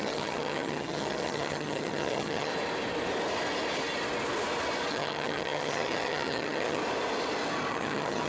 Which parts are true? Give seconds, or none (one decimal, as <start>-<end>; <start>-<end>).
2.5-4.9; 6.8-7.7